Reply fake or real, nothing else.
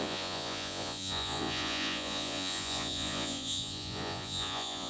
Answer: fake